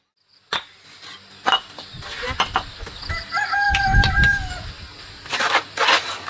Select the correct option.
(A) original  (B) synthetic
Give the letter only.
A